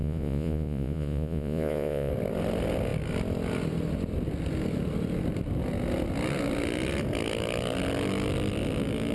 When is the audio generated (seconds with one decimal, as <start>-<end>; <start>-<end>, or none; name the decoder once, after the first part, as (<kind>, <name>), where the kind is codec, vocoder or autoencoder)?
0.0-2.1 (vocoder, Vocos)